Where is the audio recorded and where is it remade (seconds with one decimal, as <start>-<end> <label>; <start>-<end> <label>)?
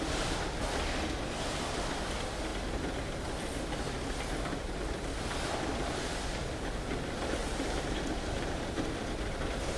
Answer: 0.0-7.4 recorded; 7.4-8.9 remade; 8.9-9.8 recorded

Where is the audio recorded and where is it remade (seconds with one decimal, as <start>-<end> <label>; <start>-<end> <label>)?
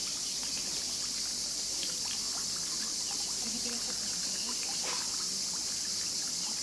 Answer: 0.0-0.6 remade; 0.6-2.9 recorded; 2.9-4.2 remade; 4.2-6.6 recorded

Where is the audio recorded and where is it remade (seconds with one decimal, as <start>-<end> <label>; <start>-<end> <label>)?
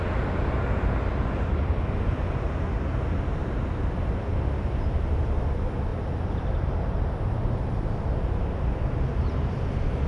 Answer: 0.0-10.1 recorded